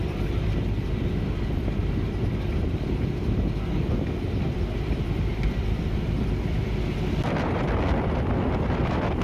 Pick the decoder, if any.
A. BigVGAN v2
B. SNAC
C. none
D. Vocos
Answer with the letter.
A